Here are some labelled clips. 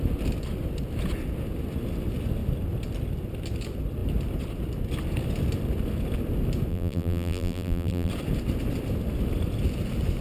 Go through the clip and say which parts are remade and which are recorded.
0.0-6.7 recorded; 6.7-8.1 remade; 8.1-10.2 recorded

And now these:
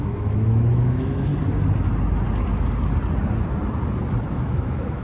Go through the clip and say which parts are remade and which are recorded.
0.0-1.3 remade; 1.3-4.3 recorded; 4.3-5.0 remade

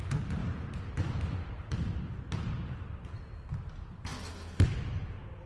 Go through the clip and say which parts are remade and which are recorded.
0.0-0.4 recorded; 0.4-2.0 remade; 2.0-5.5 recorded

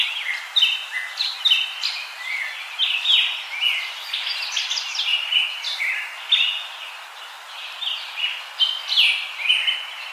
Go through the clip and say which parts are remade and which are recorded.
0.0-10.1 recorded

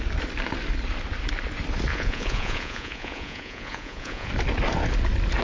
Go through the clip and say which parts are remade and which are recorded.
0.0-1.9 recorded; 1.9-4.3 remade; 4.3-5.4 recorded

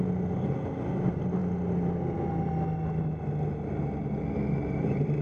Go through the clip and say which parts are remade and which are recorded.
0.0-5.2 recorded